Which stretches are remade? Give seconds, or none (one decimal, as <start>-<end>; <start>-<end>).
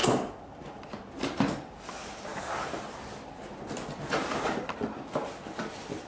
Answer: none